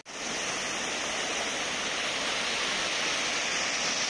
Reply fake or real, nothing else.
real